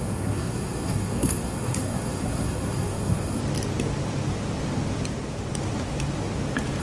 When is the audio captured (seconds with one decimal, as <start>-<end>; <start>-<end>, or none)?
3.4-6.8